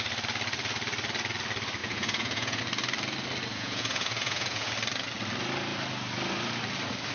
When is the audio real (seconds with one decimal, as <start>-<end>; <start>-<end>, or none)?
0.0-1.8; 2.6-3.5; 4.7-7.1